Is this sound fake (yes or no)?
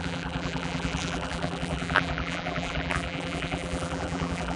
yes